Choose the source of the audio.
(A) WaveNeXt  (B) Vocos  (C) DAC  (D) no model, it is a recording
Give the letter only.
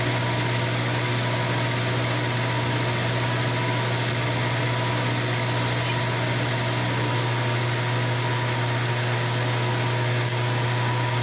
D